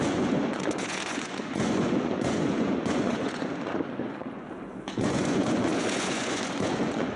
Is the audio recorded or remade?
remade